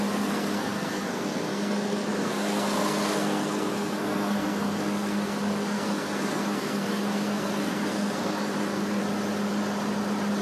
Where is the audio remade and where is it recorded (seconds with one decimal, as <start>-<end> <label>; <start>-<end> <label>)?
0.0-9.0 remade; 9.0-10.4 recorded